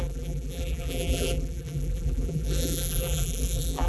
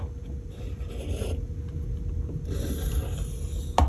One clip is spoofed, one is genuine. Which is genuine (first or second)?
second